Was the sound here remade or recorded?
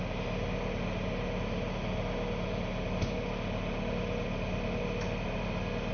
recorded